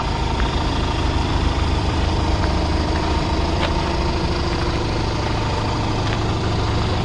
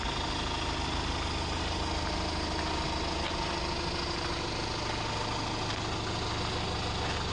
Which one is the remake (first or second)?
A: first